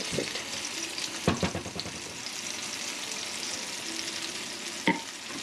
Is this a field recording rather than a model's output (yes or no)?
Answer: yes